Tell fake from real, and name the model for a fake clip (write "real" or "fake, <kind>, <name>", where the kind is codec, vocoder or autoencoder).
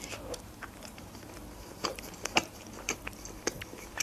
fake, vocoder, BigVGAN v2